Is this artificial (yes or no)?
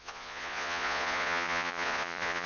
yes